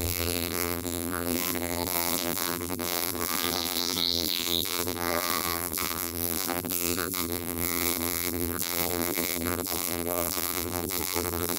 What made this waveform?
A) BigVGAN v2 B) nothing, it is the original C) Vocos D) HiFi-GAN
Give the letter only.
A